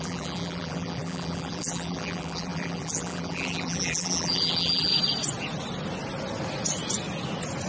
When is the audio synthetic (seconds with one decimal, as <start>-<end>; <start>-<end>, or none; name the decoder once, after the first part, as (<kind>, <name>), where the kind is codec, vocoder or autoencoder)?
0.0-4.9 (vocoder, BigVGAN v2)

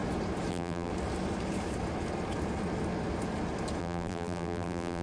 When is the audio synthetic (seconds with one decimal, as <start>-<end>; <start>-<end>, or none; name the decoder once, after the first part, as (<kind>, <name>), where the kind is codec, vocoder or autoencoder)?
0.5-0.9 (vocoder, BigVGAN v2); 3.8-5.0

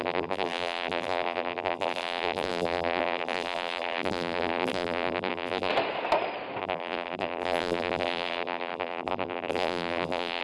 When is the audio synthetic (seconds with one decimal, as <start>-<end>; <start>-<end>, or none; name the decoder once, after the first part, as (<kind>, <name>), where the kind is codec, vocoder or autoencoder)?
0.0-5.7 (vocoder, BigVGAN v2); 6.6-10.4

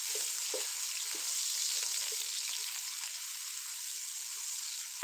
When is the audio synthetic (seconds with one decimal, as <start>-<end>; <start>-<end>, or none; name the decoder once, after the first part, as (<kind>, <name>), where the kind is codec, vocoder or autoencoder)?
0.0-0.7 (vocoder, BigVGAN v2); 3.7-5.0

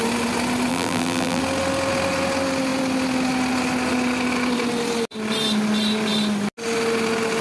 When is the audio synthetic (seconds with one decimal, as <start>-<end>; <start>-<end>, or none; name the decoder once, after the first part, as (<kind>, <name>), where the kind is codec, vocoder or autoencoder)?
0.7-1.4 (vocoder, BigVGAN v2)

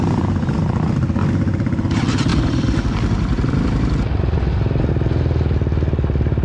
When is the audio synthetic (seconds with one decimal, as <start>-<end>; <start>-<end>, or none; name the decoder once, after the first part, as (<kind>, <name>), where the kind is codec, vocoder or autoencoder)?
2.3-4.9 (vocoder, BigVGAN v2)

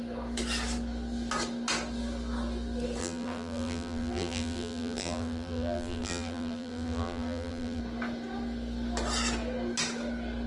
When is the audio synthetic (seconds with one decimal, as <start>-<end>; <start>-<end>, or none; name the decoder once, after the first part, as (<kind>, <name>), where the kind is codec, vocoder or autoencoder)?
3.0-7.8 (vocoder, BigVGAN v2)

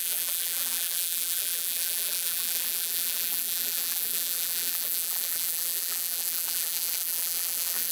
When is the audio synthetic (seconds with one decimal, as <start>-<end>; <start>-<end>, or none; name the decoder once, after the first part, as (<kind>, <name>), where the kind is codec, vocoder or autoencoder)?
0.0-7.9 (vocoder, BigVGAN v2)